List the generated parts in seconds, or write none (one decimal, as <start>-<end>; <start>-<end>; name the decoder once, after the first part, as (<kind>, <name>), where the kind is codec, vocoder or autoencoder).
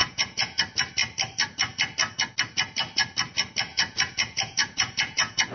0.0-0.6 (vocoder, Vocos); 3.7-5.5